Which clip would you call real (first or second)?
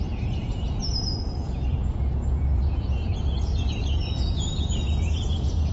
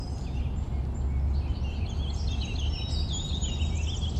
second